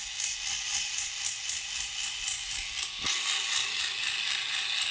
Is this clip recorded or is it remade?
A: recorded